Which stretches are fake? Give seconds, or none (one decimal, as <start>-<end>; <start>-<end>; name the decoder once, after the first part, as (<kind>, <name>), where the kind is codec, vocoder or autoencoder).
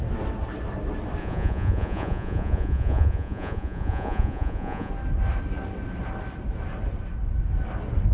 1.2-4.9 (vocoder, Vocos)